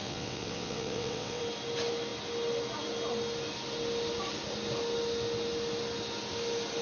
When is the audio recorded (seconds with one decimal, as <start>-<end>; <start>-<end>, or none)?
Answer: 1.4-6.8